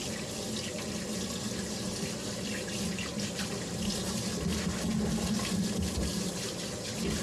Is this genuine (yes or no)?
yes